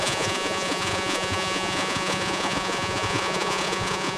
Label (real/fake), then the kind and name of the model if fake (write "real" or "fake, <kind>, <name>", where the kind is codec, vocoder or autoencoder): fake, vocoder, Vocos